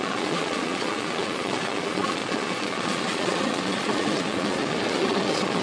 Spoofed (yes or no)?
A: yes